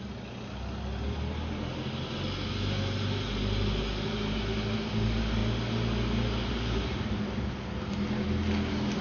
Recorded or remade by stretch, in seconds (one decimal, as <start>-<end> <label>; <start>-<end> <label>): 0.0-9.0 recorded